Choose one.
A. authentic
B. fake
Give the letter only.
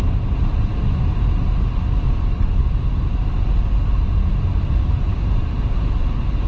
A